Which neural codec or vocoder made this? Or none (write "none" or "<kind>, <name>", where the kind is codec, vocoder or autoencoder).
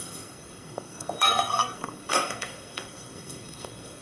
codec, SNAC